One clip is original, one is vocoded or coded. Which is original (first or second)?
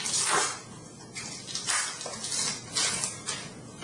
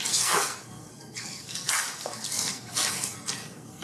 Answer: first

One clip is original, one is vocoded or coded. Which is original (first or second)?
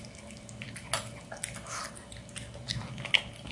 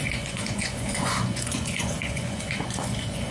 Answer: first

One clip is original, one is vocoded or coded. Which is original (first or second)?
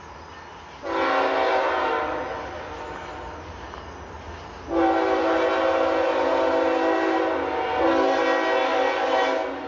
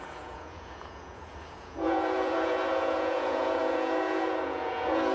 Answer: first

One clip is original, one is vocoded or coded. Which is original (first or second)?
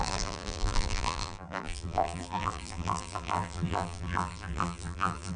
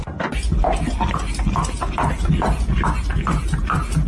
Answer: second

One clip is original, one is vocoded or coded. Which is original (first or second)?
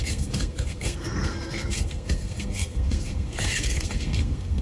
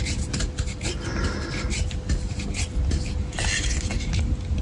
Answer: second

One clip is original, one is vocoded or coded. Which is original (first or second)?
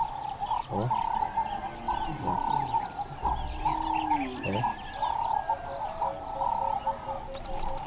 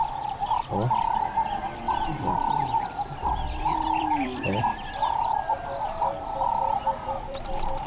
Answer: first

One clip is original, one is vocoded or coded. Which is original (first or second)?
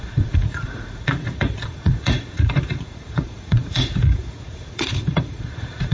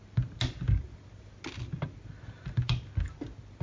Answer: second